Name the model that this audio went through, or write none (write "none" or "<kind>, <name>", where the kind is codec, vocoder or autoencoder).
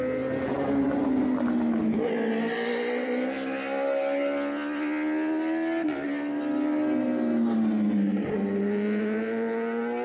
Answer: none